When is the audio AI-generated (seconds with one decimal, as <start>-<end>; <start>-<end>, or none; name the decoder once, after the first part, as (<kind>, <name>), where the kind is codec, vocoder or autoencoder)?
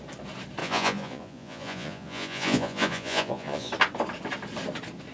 0.6-3.7 (vocoder, Vocos)